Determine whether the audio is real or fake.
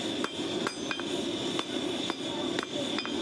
real